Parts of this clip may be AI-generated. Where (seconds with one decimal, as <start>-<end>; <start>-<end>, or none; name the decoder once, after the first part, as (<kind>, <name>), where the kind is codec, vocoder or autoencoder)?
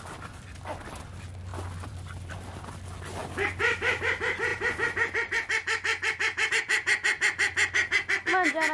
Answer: 1.5-2.3 (vocoder, BigVGAN v2); 3.2-4.0